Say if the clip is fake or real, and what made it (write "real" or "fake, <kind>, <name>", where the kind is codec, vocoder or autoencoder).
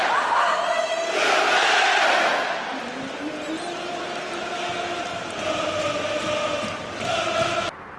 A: real